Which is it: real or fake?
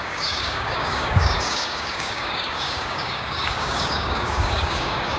fake